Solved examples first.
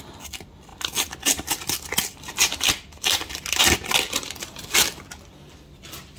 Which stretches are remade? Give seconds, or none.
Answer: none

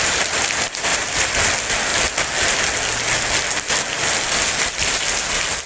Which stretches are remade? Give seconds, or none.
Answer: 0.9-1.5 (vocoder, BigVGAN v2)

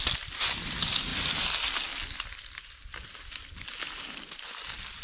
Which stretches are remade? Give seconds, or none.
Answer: none

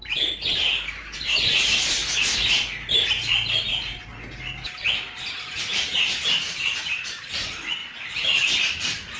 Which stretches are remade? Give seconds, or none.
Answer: 0.0-2.0 (vocoder, BigVGAN v2); 6.3-9.2

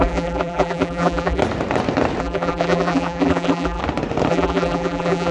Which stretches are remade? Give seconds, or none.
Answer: 0.0-1.4 (vocoder, BigVGAN v2); 2.2-3.8; 4.3-5.3

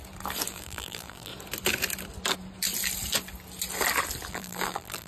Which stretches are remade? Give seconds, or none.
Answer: 0.5-1.3 (vocoder, BigVGAN v2); 4.3-5.1

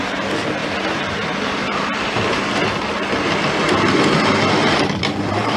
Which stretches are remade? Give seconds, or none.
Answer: 0.0-1.6 (vocoder, BigVGAN v2); 5.0-5.6